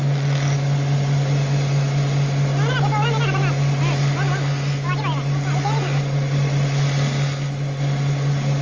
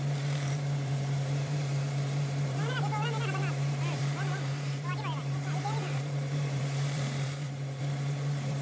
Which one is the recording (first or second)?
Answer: first